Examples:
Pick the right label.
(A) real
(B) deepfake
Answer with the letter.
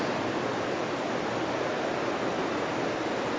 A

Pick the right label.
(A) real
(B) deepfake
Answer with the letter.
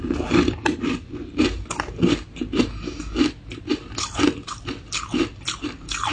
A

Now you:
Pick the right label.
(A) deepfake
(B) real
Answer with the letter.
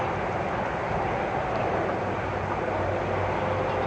B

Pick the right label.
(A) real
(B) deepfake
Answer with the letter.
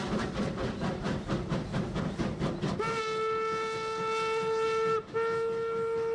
A